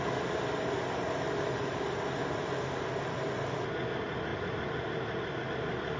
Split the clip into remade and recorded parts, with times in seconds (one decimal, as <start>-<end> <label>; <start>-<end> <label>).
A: 0.0-6.0 recorded